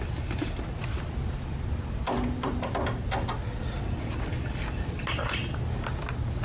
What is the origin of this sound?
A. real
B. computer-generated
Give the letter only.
A